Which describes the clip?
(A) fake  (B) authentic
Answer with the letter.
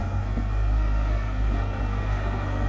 A